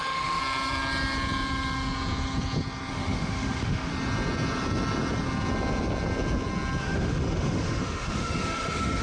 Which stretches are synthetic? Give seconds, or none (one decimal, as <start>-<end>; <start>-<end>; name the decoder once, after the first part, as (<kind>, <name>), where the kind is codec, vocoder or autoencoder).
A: 0.0-0.4 (autoencoder, DAC-VAE); 2.9-3.9; 6.8-9.0